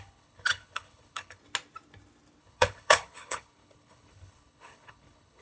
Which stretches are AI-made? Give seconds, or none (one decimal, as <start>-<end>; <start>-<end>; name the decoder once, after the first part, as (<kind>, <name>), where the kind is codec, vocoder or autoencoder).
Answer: 0.0-1.4 (codec, HILCodec); 2.4-5.4